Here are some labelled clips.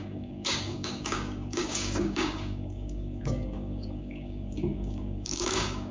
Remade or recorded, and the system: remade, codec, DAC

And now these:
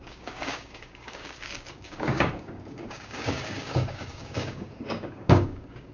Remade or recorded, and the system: remade, codec, DAC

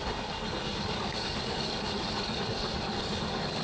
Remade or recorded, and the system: remade, codec, DAC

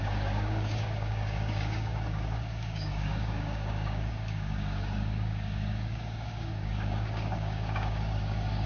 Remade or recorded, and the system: remade, codec, DAC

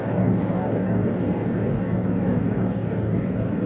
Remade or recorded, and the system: remade, codec, DAC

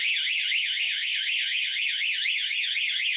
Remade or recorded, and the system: remade, codec, DAC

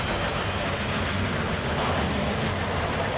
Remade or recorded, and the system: recorded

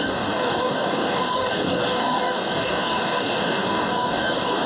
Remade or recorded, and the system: remade, codec, DAC